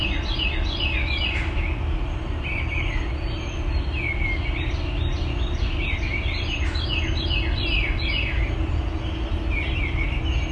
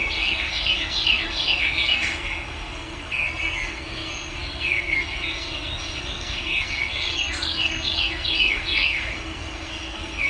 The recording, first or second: first